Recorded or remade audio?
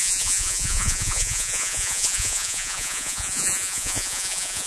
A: remade